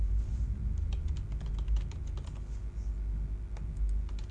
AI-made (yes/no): no